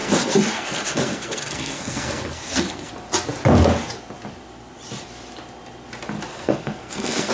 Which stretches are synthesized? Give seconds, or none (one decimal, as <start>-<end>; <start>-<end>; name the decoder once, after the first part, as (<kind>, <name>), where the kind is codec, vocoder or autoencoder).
0.0-2.9 (codec, SNAC); 6.3-7.3

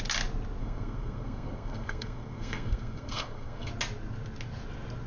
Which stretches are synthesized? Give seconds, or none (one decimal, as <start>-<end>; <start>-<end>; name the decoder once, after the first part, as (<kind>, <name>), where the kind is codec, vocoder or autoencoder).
0.6-3.7 (codec, SNAC)

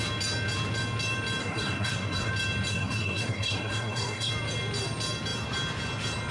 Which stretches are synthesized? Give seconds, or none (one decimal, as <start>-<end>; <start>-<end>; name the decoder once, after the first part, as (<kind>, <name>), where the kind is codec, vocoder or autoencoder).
1.4-2.3 (codec, SNAC); 2.7-4.3

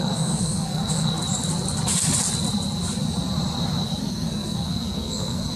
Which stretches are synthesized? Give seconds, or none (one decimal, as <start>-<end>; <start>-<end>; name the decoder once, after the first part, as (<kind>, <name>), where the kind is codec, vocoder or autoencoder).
0.0-1.1 (codec, SNAC); 4.0-5.6

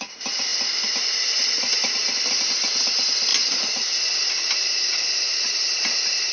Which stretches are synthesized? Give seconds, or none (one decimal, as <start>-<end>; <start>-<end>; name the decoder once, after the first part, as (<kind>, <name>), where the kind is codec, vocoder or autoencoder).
none

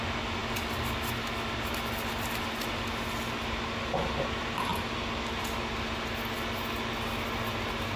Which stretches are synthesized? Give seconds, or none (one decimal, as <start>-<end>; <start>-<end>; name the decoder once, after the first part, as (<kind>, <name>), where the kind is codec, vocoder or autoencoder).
none